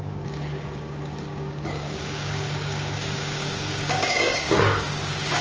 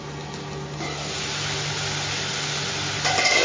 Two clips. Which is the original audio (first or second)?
second